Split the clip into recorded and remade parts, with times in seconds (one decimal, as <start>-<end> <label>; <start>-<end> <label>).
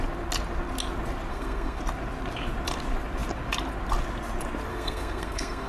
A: 0.0-1.3 recorded; 1.3-1.8 remade; 1.8-4.7 recorded; 4.7-5.7 remade